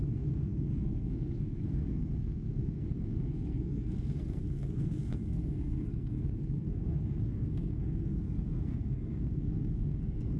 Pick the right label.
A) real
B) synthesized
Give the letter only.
B